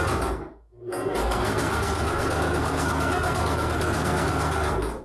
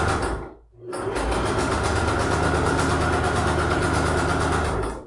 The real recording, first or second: second